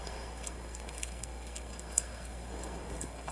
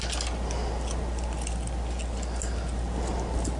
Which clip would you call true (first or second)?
second